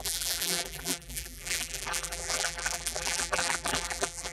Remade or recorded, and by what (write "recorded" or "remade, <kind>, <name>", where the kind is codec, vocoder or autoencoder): remade, vocoder, BigVGAN v2